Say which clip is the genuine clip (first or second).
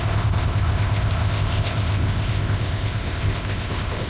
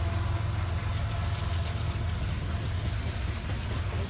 second